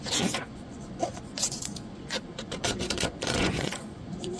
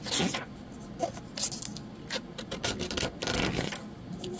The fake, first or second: first